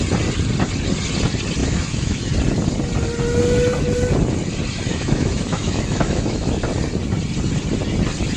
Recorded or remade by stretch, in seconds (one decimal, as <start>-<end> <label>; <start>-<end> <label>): 0.0-1.6 recorded; 1.6-2.3 remade; 2.3-4.9 recorded; 4.9-6.6 remade; 6.6-8.4 recorded